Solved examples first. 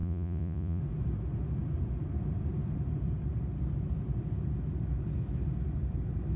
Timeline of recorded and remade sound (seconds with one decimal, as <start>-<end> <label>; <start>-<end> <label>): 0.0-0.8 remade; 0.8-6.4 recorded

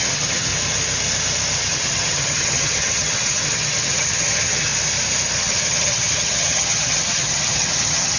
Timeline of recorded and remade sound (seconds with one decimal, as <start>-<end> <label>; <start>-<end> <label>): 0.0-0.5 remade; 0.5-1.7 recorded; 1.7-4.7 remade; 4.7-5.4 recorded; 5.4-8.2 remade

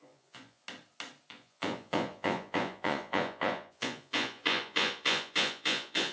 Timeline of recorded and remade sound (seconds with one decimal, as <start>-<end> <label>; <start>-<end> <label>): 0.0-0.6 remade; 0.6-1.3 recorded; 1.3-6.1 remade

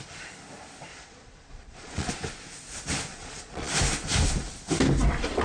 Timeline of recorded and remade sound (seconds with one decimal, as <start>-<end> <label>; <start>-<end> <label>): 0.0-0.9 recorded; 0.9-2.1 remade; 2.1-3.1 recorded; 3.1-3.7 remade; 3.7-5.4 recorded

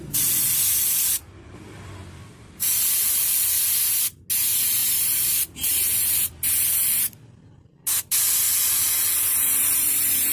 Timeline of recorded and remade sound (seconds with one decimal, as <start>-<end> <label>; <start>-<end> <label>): 0.0-4.8 recorded; 4.8-6.3 remade; 6.3-9.4 recorded; 9.4-10.3 remade